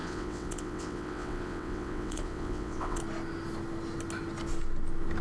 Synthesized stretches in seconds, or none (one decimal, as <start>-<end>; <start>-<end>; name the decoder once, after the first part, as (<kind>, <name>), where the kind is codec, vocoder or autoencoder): 0.0-3.0 (vocoder, WaveNeXt)